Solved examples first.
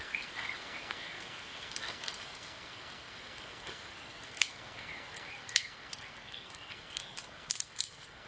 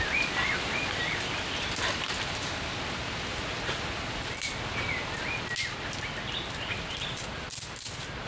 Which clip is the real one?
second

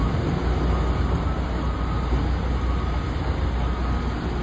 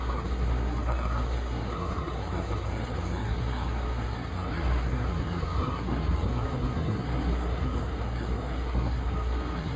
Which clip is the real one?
first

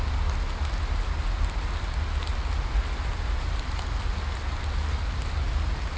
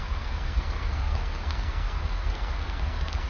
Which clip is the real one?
first